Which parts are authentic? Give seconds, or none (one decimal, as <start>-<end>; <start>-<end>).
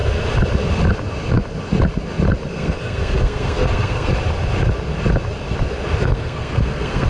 0.0-2.5; 4.1-6.0